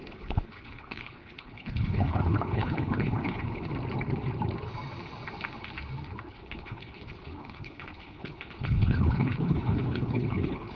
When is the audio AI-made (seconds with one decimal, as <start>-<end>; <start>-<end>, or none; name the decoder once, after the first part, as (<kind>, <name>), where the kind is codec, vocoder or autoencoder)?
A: 0.0-3.7 (codec, HILCodec); 6.3-10.7